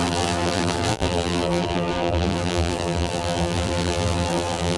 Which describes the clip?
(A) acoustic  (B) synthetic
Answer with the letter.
B